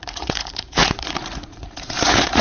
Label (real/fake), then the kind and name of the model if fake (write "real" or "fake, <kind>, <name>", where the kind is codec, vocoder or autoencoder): fake, vocoder, Vocos